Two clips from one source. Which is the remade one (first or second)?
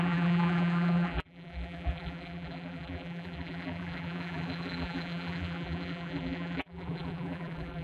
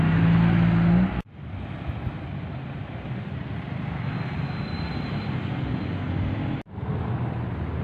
first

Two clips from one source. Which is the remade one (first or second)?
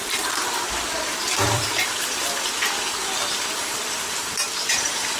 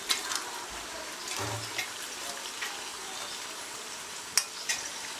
first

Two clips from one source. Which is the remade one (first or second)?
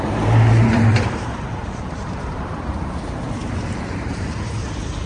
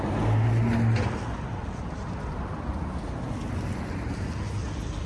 first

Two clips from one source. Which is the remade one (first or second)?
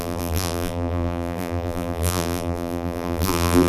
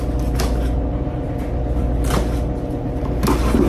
first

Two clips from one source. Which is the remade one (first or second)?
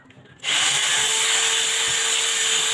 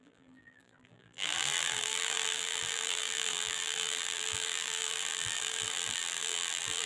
second